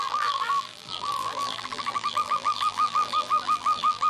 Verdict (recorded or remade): remade